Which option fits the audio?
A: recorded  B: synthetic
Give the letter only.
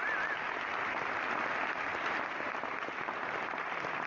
A